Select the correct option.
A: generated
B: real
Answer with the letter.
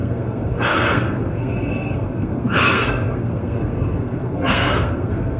A